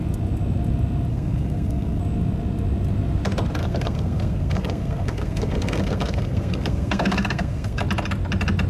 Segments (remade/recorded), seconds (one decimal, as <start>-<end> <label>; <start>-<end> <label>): 0.0-1.1 recorded; 1.1-2.0 remade; 2.0-3.6 recorded; 3.6-7.8 remade; 7.8-8.7 recorded